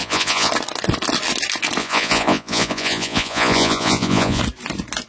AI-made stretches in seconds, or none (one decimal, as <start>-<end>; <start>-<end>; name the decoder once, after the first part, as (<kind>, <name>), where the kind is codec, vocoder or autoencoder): 0.0-0.5 (vocoder, Vocos); 1.8-4.4